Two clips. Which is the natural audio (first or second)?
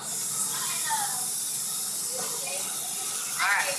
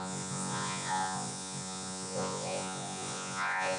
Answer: first